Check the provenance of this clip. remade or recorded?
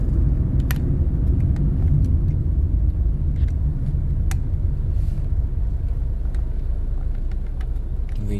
recorded